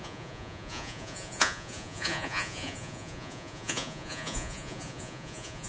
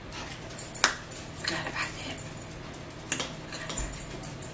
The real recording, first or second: second